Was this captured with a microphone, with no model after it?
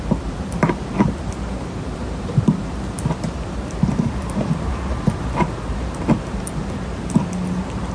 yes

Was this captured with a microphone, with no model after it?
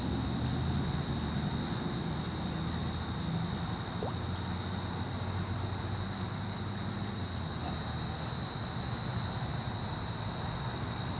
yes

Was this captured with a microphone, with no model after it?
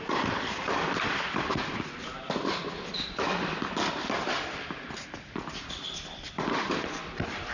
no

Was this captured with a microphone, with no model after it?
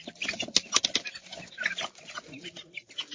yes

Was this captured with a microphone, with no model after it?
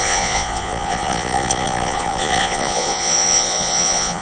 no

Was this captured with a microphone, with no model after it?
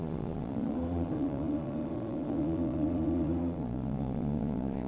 no